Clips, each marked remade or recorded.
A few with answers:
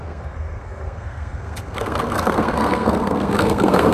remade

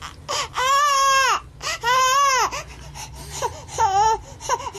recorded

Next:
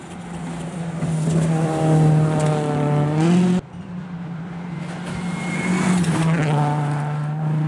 recorded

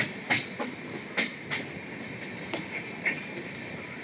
recorded